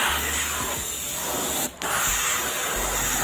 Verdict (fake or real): real